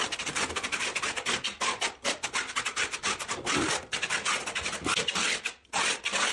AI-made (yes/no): no